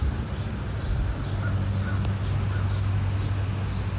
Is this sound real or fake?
real